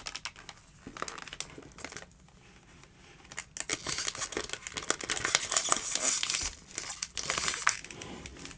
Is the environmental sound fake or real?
real